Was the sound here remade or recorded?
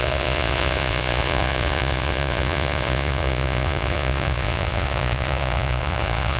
remade